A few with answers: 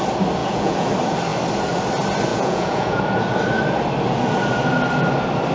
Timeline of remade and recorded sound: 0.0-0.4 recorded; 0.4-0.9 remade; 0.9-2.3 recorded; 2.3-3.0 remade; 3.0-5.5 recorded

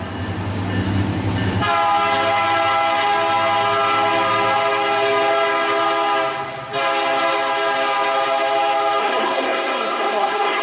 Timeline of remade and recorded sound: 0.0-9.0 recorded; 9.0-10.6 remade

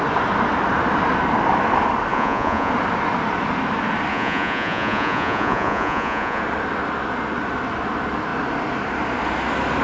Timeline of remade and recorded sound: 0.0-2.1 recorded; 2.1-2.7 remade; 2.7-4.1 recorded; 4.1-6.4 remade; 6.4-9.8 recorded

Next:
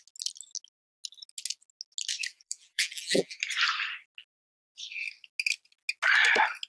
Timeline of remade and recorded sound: 0.0-2.3 recorded; 2.3-3.4 remade; 3.4-6.7 recorded

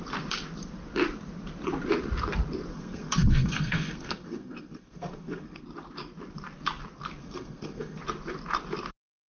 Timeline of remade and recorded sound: 0.0-2.7 recorded; 2.7-5.6 remade; 5.6-7.2 recorded; 7.2-8.0 remade; 8.0-9.3 recorded

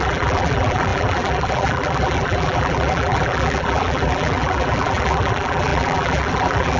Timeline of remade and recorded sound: 0.0-6.8 remade

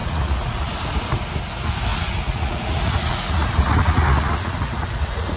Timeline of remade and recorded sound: 0.0-0.7 remade; 0.7-1.9 recorded; 1.9-5.4 remade

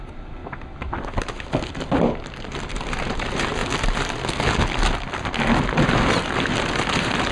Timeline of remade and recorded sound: 0.0-0.4 remade; 0.4-2.7 recorded; 2.7-3.6 remade; 3.6-6.3 recorded; 6.3-7.3 remade